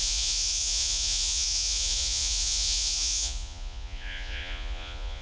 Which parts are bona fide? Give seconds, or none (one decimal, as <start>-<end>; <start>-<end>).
none